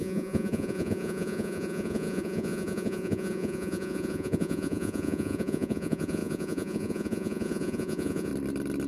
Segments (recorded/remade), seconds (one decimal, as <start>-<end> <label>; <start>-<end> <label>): 0.0-8.3 remade; 8.3-8.9 recorded